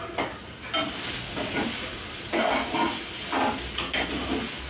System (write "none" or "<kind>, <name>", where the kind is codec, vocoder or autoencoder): none